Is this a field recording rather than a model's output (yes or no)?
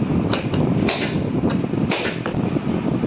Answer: yes